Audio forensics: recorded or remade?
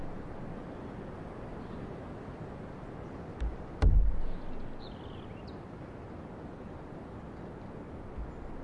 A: recorded